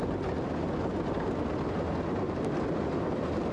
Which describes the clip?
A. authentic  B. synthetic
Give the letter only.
A